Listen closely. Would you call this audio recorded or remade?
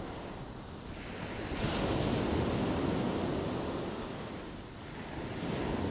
recorded